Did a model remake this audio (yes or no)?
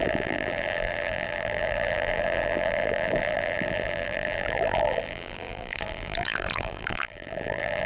yes